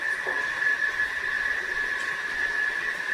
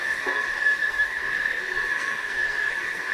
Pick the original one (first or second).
first